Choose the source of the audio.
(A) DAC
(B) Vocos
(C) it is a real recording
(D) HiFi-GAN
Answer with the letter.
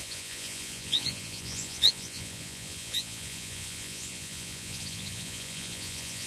B